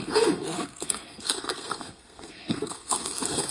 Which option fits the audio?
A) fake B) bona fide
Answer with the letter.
A